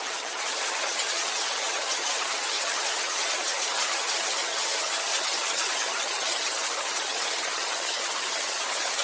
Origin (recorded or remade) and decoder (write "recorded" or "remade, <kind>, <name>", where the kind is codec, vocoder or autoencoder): remade, vocoder, HiFi-GAN